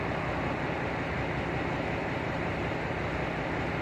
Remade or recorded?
recorded